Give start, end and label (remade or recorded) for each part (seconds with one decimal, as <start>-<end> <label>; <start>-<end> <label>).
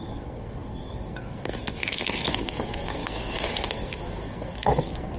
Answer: 0.0-5.2 remade